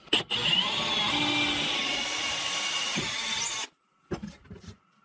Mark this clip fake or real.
real